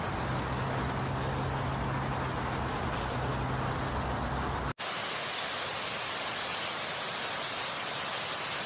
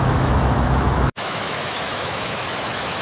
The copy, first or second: second